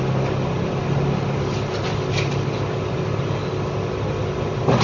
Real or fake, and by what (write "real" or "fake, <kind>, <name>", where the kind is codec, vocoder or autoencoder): real